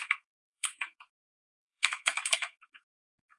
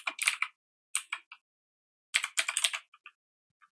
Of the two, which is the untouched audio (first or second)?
second